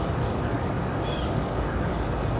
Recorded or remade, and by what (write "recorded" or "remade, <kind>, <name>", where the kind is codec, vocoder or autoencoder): remade, codec, DAC